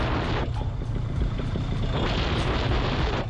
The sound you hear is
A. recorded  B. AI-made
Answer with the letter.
A